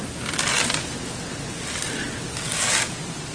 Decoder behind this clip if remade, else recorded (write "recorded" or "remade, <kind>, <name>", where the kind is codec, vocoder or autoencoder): recorded